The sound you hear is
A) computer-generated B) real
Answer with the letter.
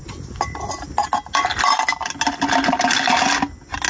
B